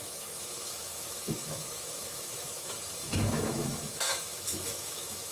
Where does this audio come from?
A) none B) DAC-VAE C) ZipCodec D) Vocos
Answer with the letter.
B